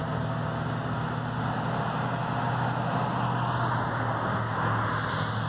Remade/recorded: recorded